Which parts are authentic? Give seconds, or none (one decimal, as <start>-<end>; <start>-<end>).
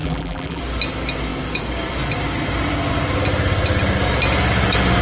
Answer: 0.6-5.0